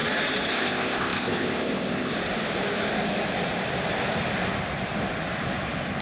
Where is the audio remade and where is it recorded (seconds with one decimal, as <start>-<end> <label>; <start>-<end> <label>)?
0.0-0.5 recorded; 0.5-2.1 remade; 2.1-6.0 recorded